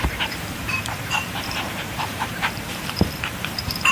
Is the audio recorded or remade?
remade